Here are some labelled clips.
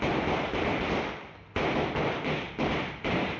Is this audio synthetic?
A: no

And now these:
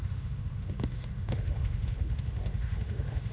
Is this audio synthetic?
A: yes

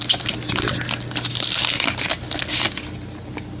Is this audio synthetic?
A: no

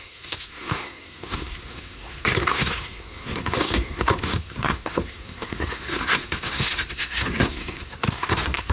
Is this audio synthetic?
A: yes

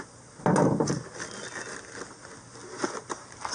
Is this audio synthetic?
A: no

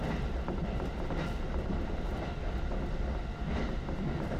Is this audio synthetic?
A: no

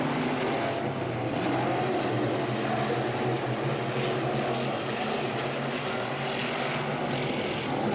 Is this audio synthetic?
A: no